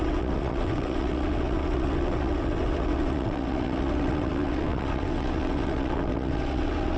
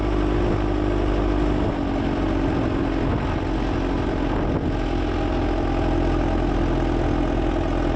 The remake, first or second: first